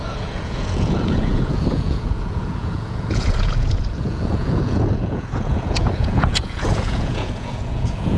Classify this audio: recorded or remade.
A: remade